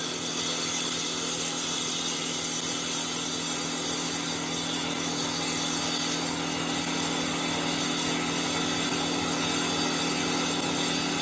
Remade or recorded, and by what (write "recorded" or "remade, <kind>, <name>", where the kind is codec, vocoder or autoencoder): recorded